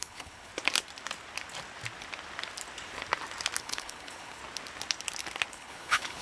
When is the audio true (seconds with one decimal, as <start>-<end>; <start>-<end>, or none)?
0.5-3.6; 4.4-5.5